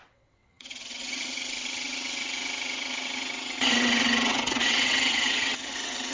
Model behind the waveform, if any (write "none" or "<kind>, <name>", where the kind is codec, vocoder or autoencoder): vocoder, WaveNeXt